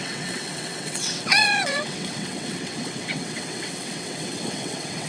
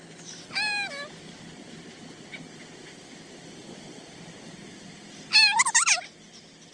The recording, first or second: second